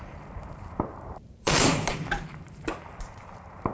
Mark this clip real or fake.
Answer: fake